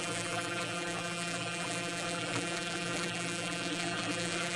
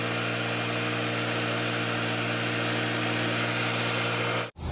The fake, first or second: first